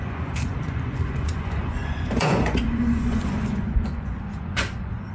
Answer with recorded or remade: remade